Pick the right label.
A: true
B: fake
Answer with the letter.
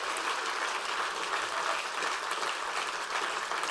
A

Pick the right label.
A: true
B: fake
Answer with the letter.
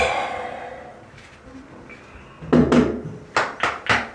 A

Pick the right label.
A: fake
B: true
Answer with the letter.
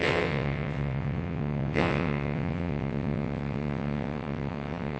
A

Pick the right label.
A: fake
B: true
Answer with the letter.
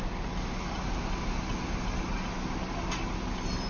B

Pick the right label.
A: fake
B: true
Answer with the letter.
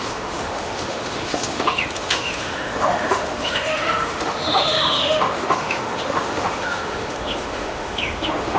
A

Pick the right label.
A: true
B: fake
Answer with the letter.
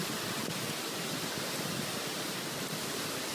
B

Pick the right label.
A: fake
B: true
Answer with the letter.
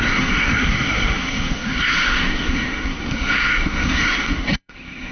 A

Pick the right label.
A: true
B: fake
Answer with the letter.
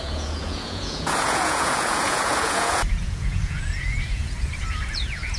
B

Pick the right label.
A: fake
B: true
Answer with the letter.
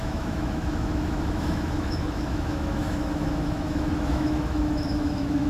A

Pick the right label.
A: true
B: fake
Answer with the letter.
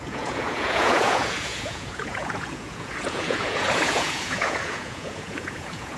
B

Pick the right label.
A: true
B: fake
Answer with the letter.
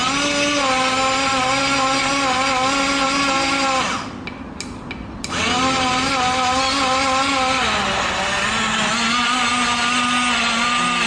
A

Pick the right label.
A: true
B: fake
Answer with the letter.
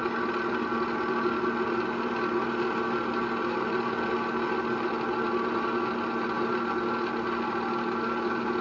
A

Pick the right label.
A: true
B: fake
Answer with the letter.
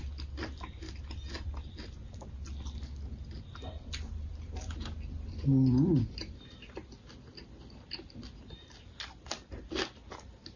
A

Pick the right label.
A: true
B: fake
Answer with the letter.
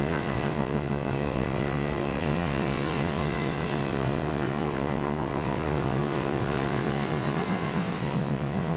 B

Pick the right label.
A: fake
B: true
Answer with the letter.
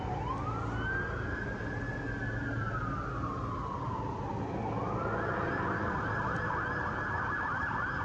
B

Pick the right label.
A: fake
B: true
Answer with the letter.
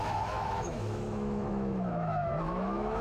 A